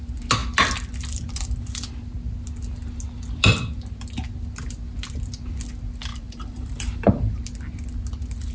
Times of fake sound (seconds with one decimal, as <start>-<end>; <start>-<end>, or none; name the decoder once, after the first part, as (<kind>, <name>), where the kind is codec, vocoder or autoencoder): 6.1-7.1 (vocoder, BigVGAN v2)